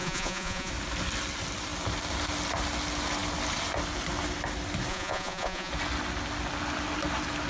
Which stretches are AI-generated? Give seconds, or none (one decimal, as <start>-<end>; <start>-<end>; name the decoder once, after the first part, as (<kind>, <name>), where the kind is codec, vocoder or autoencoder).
0.0-0.7 (vocoder, Vocos); 4.9-5.7